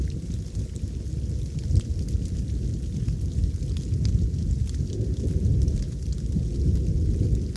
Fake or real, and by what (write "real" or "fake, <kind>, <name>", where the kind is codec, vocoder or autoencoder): real